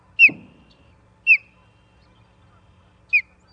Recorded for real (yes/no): yes